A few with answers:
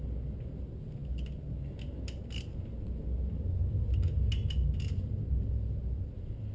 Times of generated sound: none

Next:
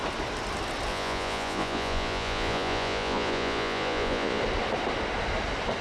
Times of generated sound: 0.9-4.4 (vocoder, Vocos)

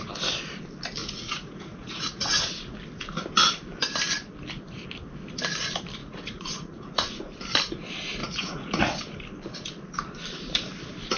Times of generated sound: 1.0-2.4 (vocoder, Vocos); 6.0-7.3; 8.2-8.8

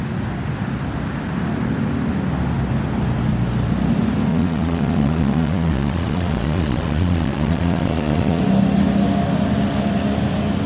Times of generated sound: 4.3-8.4 (vocoder, Vocos)